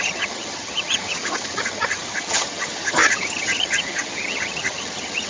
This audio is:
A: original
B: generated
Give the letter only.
B